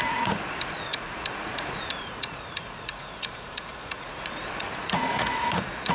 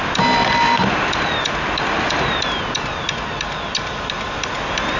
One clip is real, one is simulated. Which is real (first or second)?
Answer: second